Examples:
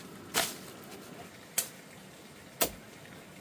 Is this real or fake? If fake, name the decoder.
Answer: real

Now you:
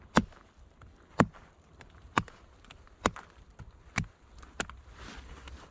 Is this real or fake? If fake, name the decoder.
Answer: real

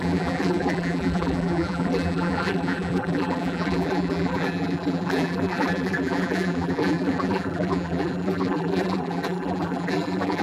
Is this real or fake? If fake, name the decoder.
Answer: fake, vocoder, BigVGAN v2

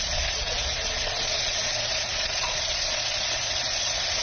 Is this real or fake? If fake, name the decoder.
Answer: fake, vocoder, Vocos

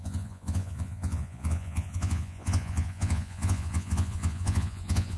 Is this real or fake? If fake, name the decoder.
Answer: fake, vocoder, Vocos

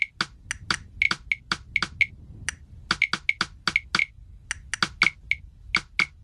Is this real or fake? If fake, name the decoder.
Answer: real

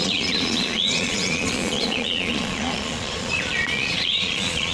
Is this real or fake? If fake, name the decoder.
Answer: fake, vocoder, Vocos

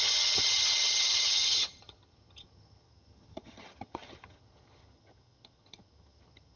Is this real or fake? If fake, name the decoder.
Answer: fake, vocoder, HiFi-GAN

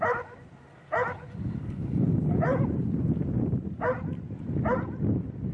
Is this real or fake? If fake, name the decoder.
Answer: real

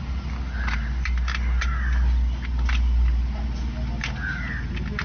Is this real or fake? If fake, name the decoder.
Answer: real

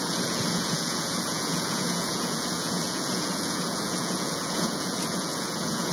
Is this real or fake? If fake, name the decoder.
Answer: fake, vocoder, Vocos